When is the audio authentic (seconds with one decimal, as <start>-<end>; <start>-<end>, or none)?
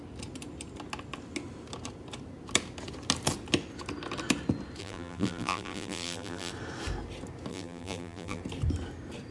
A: 0.0-4.8; 6.5-7.5; 8.4-9.3